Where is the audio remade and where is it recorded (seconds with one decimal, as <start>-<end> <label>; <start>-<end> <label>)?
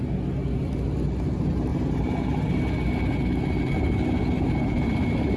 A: 0.0-1.7 recorded; 1.7-2.6 remade; 2.6-5.4 recorded